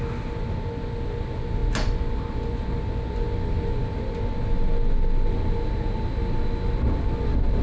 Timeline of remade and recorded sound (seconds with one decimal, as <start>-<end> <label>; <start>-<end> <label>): 0.0-7.6 recorded